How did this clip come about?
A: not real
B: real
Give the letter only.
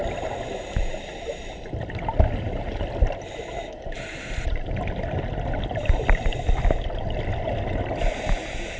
B